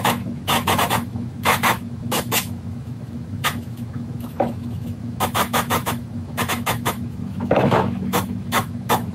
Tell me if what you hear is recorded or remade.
remade